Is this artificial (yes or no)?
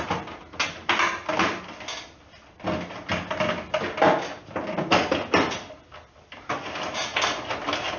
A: no